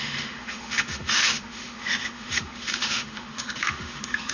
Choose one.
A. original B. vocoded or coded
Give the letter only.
B